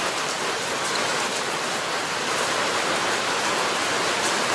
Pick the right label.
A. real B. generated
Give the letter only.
A